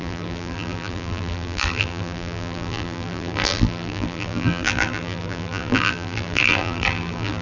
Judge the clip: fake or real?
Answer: fake